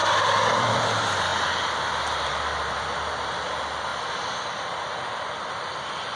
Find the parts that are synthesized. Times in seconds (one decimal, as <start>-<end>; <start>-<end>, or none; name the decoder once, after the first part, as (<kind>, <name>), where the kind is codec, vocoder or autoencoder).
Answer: 0.6-1.3 (vocoder, BigVGAN v2); 2.3-3.9; 4.4-6.2